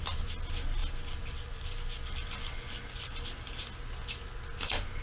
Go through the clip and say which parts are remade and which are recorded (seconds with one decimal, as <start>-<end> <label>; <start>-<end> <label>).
0.0-5.0 recorded